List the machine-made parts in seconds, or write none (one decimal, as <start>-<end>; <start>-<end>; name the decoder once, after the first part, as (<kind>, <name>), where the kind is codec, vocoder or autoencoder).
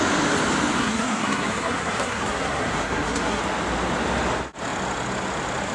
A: 0.8-3.4 (codec, SNAC)